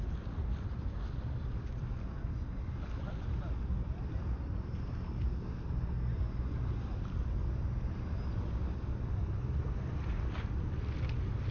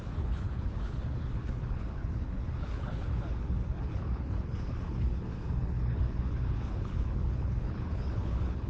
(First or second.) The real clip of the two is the first